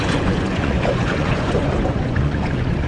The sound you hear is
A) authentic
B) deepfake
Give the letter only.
B